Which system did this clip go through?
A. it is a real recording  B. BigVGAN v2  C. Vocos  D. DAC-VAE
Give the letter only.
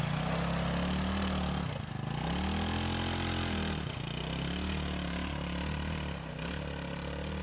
A